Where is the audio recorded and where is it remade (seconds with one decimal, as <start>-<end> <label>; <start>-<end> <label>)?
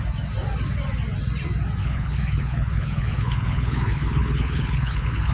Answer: 0.0-1.8 recorded; 1.8-5.3 remade